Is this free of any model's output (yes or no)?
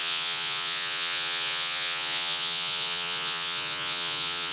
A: no